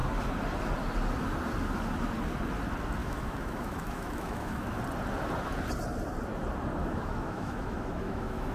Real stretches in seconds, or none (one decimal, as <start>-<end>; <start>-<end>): 0.0-3.0; 4.8-6.8